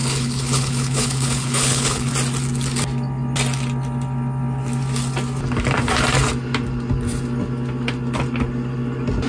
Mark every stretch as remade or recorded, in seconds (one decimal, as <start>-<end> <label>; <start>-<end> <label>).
0.0-2.1 remade; 2.1-9.3 recorded